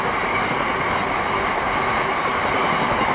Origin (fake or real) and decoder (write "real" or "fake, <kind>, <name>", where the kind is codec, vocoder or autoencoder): real